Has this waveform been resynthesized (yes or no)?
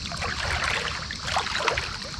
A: no